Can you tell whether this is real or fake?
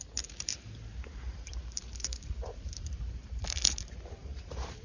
fake